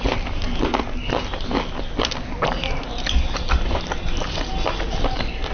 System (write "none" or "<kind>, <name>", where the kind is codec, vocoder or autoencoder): none